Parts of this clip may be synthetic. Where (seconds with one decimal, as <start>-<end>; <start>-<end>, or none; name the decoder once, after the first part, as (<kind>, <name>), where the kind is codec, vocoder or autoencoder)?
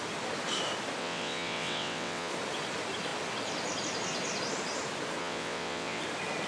1.0-2.3 (vocoder, WaveNeXt); 5.2-6.0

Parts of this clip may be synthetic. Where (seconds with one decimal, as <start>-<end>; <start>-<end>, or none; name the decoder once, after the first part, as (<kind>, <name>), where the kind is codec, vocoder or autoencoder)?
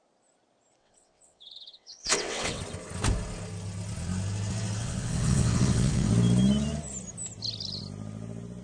0.8-2.6 (vocoder, WaveNeXt); 4.8-6.1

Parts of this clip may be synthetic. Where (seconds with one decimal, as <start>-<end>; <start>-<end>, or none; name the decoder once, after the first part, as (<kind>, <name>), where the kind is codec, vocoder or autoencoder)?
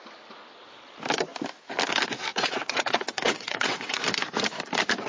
2.3-4.0 (vocoder, WaveNeXt)